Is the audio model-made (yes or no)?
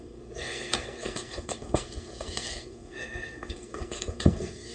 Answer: yes